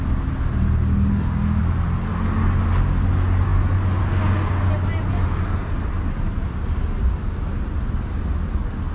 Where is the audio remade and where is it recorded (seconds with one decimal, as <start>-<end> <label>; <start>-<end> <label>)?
0.0-1.1 recorded; 1.1-1.6 remade; 1.6-8.9 recorded